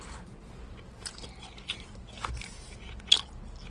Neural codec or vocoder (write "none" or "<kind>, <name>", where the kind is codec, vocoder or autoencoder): none